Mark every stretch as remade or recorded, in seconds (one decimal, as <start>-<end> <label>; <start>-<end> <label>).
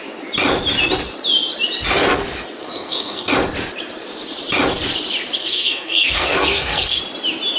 0.0-2.6 recorded; 2.6-3.3 remade; 3.3-5.4 recorded; 5.4-7.0 remade; 7.0-7.6 recorded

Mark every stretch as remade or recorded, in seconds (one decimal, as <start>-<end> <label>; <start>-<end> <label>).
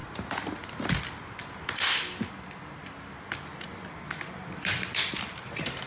0.0-5.9 recorded